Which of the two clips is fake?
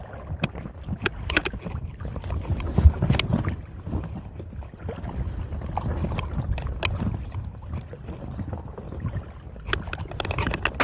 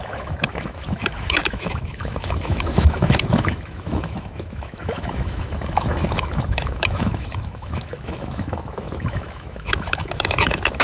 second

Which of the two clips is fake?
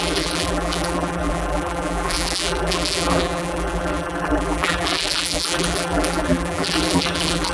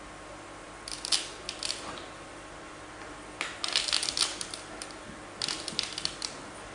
first